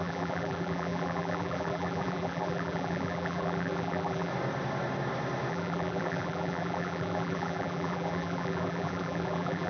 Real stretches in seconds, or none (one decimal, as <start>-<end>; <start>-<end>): 4.3-5.5